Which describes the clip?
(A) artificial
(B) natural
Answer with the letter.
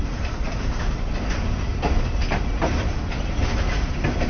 B